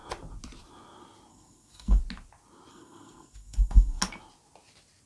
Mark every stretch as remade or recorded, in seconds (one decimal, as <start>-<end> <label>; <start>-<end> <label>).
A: 0.0-1.3 recorded; 1.3-2.0 remade; 2.0-2.7 recorded; 2.7-4.0 remade; 4.0-5.1 recorded